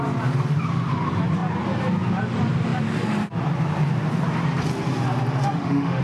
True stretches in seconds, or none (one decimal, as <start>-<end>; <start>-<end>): 0.0-5.4